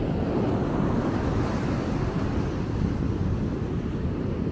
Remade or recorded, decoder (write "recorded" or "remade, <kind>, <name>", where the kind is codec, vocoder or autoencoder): recorded